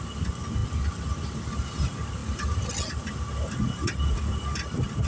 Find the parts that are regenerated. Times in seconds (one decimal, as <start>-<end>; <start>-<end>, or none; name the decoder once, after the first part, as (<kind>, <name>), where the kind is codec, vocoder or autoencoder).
none